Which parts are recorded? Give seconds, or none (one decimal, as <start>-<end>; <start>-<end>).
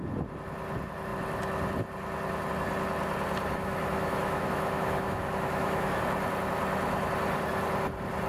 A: 0.0-3.6; 6.0-8.3